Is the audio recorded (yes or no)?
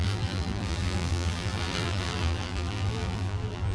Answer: no